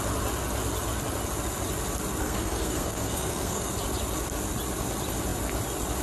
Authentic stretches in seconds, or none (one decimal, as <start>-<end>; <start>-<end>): 0.0-2.2; 3.7-6.0